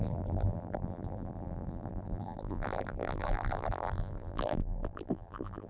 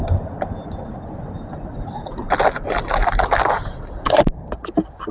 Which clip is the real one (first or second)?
second